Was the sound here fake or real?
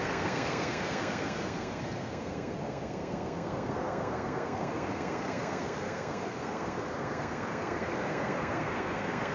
fake